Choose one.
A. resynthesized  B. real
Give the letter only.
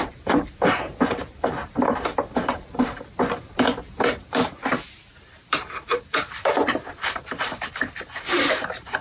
A